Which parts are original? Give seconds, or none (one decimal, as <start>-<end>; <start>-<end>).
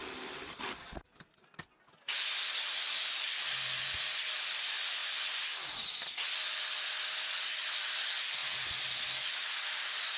0.0-10.2